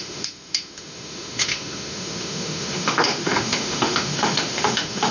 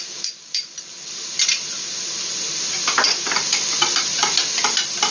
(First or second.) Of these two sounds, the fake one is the first